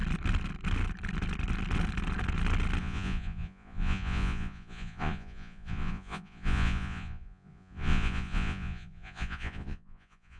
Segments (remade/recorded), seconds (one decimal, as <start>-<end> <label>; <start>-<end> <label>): 0.0-2.8 recorded; 2.8-10.4 remade